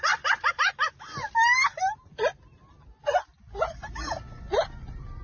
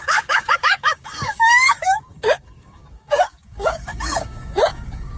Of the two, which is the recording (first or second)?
first